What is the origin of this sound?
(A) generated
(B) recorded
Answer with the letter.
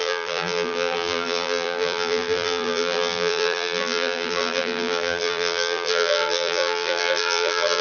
A